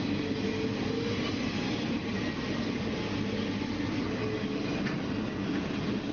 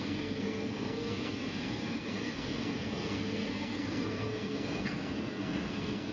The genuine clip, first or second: first